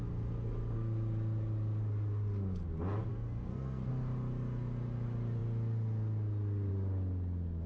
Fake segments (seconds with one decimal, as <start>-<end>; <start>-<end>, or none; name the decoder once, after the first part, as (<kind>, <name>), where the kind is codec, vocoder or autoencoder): 3.1-3.9 (codec, SNAC)